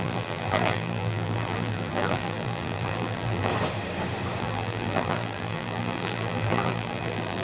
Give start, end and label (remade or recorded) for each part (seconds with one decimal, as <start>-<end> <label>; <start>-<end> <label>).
0.0-3.5 remade; 3.5-4.4 recorded; 4.4-7.4 remade